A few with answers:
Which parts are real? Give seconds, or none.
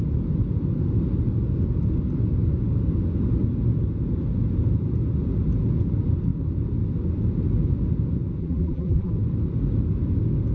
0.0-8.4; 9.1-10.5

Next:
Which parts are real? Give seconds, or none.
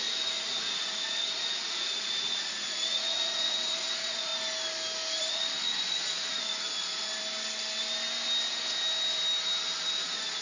4.3-5.3; 7.1-9.9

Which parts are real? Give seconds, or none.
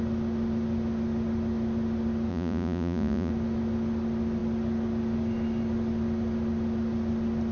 0.0-2.3; 3.3-7.5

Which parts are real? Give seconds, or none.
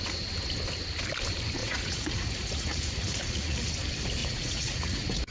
0.0-1.6; 3.7-4.2